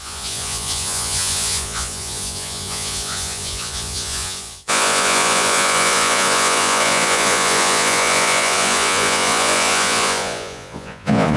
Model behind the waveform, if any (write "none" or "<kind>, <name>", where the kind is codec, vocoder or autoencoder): vocoder, Vocos